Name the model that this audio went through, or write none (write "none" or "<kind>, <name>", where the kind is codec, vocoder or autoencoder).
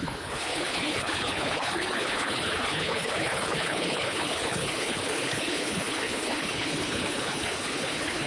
codec, HILCodec